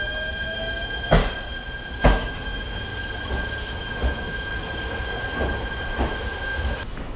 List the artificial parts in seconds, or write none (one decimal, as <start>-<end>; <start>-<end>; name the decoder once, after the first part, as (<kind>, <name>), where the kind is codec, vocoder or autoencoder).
0.0-1.2 (autoencoder, DAC-VAE); 2.0-2.9; 3.6-4.5; 6.0-7.2